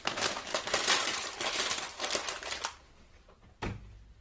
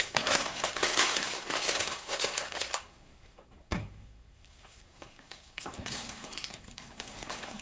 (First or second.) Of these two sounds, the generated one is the second